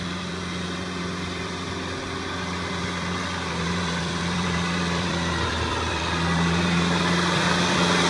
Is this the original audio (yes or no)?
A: no